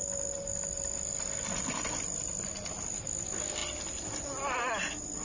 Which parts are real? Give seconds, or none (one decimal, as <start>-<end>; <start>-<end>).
0.0-5.2